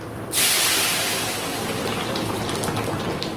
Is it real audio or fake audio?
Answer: real